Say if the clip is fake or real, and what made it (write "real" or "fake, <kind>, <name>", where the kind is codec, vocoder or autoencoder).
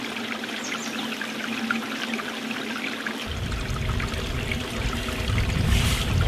real